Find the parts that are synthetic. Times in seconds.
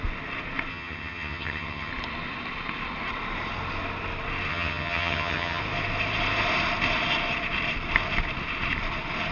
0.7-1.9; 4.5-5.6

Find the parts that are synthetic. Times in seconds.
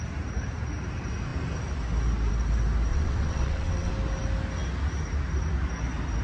2.9-3.9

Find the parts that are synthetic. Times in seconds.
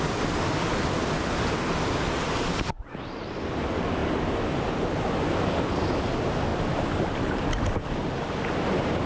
none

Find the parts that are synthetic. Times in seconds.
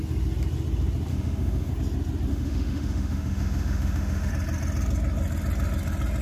1.1-1.7; 2.3-4.3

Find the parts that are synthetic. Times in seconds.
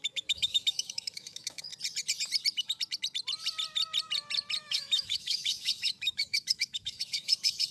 0.0-1.7; 4.6-7.7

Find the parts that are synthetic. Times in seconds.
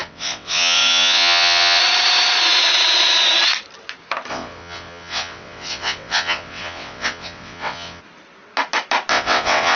0.0-1.8; 4.3-8.0; 9.1-9.8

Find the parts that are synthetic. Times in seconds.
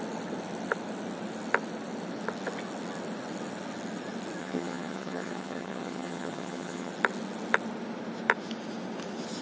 4.4-6.9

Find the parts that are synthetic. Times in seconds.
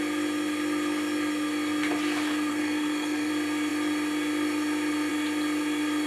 2.5-3.3